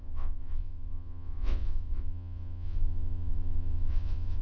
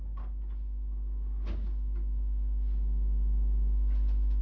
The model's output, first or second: first